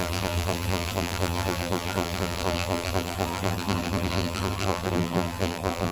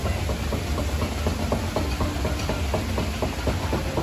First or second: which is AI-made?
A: first